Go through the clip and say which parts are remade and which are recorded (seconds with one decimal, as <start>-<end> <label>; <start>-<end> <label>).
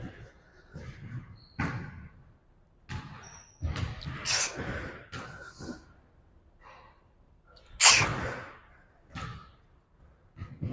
0.0-10.7 recorded